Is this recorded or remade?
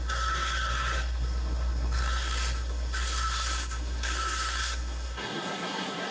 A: remade